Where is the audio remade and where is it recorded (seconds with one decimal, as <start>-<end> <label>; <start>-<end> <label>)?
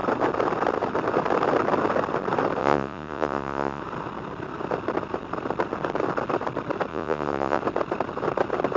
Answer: 0.0-2.6 recorded; 2.6-3.8 remade; 3.8-6.9 recorded; 6.9-7.6 remade; 7.6-8.8 recorded